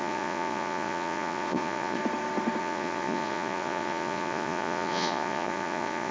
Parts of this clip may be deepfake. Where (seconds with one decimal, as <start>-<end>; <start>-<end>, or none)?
0.0-2.0; 2.6-6.1